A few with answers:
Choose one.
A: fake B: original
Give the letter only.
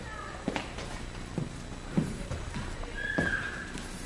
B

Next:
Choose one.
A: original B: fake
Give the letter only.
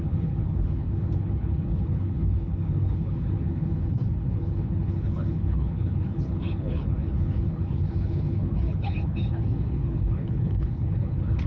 B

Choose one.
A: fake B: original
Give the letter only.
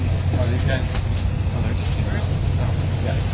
B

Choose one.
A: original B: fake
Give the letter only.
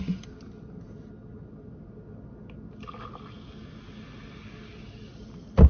A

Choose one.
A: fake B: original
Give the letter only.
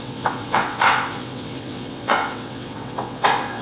A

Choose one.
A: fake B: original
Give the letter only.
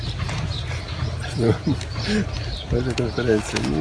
B